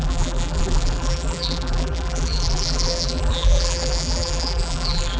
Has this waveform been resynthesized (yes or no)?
yes